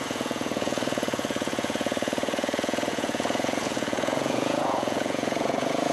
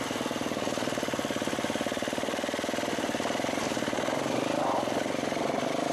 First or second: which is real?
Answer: second